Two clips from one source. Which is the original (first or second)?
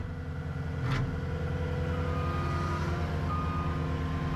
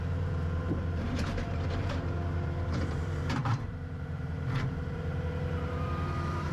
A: first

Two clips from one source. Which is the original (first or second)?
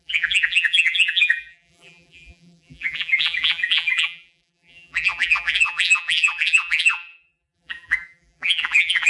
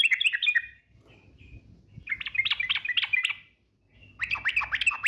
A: second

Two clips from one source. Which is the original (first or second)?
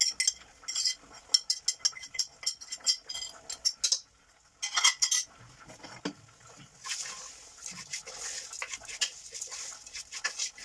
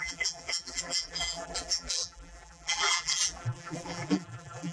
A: first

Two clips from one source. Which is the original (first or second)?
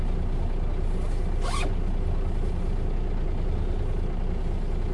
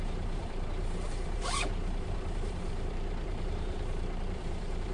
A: first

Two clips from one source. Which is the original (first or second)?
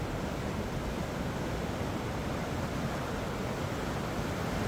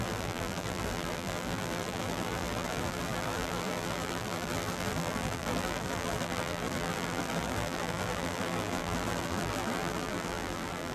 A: first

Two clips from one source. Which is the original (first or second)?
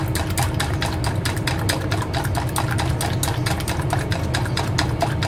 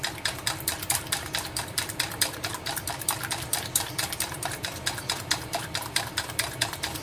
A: first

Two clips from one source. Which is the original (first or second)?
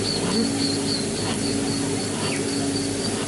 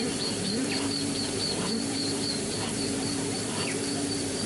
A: first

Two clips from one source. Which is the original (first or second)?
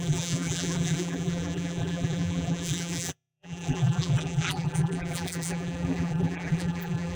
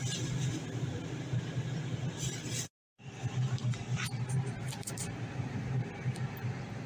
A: second